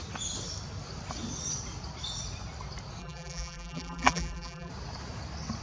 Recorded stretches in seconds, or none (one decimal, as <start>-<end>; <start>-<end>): 0.0-3.0; 4.7-5.6